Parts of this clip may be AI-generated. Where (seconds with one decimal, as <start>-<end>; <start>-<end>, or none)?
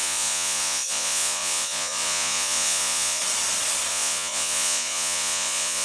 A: 0.0-3.2; 3.9-5.8